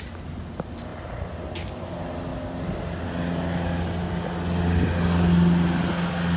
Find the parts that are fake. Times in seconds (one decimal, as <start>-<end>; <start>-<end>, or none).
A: none

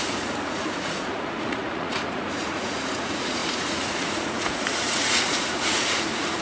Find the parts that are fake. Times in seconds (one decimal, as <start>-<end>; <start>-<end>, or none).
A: 0.0-6.4

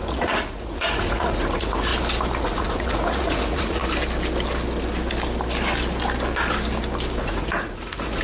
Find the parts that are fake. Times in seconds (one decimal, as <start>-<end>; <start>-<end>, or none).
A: 0.0-1.9; 2.4-3.8; 7.2-8.2

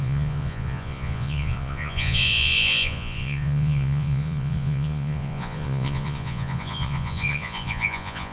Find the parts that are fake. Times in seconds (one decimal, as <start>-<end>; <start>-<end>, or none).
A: 0.0-8.3

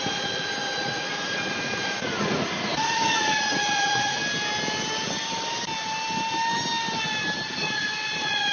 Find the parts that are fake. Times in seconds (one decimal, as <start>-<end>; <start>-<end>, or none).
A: 0.0-4.2; 7.5-8.5

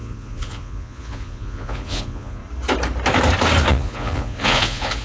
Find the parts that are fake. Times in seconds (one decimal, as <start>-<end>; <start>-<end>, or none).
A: 0.0-2.4; 3.7-5.0

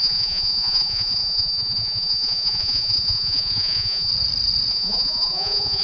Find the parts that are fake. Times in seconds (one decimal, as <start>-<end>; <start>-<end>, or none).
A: 0.0-4.1; 4.7-5.8